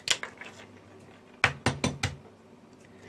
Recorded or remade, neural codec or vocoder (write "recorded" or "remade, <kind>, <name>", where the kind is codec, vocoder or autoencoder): recorded